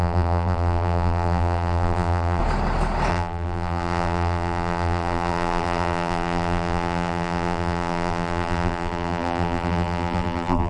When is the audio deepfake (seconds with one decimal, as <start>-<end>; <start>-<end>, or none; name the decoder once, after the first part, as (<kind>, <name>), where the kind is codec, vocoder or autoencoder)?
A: 0.0-2.4 (vocoder, BigVGAN v2); 3.1-10.7